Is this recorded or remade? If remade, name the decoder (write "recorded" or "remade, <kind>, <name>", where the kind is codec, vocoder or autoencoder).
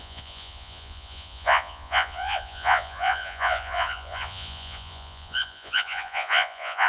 remade, vocoder, Vocos